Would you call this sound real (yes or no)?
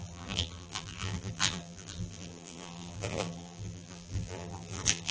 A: no